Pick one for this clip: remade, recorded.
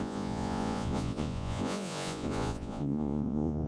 remade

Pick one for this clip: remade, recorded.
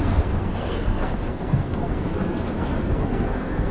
remade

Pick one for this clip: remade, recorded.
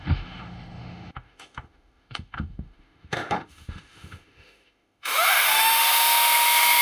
remade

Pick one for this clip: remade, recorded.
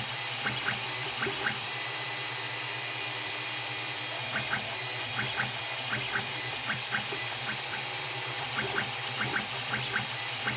remade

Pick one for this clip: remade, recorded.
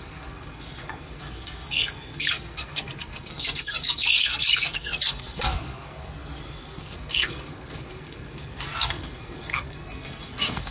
remade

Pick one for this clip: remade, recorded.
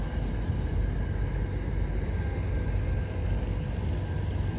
recorded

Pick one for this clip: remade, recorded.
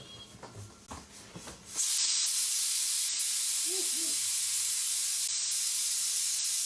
recorded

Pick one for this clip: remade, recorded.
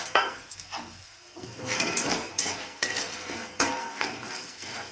remade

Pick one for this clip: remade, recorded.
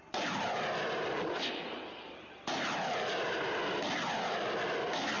recorded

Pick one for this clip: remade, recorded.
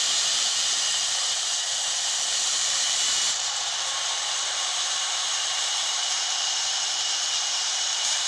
remade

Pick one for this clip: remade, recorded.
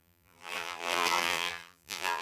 remade